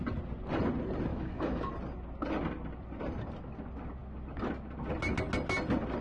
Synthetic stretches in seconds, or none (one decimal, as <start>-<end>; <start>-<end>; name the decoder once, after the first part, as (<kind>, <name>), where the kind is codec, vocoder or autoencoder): 1.1-1.7 (autoencoder, DAC-VAE)